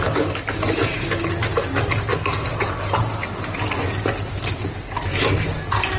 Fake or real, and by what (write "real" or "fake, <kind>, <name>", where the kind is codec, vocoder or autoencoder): real